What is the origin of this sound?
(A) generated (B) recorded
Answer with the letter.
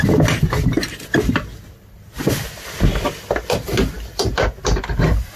B